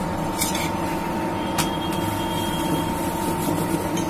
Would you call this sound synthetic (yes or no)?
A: no